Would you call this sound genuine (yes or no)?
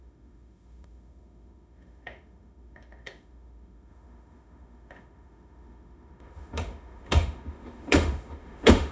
no